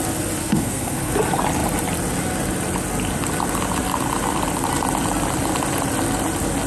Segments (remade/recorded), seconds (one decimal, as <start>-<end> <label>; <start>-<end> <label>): 0.0-0.4 recorded; 0.4-1.1 remade; 1.1-6.7 recorded

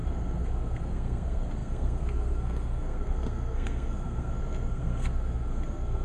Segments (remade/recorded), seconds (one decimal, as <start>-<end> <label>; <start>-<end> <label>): 0.0-6.0 remade

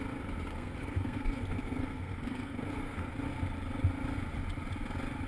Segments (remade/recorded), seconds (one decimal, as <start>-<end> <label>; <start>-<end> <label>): 0.0-0.5 recorded; 0.5-3.1 remade; 3.1-5.3 recorded

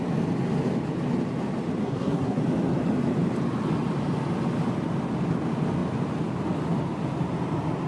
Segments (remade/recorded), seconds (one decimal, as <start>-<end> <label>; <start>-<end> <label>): 0.0-1.8 recorded; 1.8-2.4 remade; 2.4-7.9 recorded

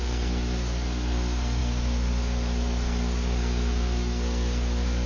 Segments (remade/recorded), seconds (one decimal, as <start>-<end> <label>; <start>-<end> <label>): 0.0-5.1 remade

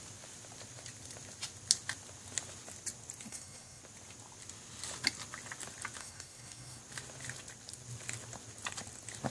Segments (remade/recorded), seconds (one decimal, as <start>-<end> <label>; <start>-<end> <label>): 0.0-3.3 recorded; 3.3-3.8 remade; 3.8-6.0 recorded; 6.0-6.8 remade; 6.8-9.3 recorded

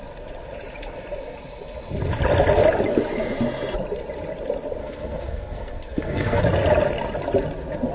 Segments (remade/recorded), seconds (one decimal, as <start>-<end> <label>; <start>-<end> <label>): 0.0-4.8 recorded; 4.8-6.4 remade; 6.4-7.9 recorded

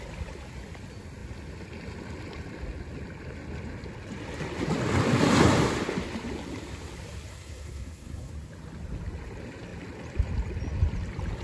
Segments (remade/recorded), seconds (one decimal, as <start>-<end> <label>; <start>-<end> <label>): 0.0-7.3 recorded; 7.3-8.3 remade; 8.3-11.4 recorded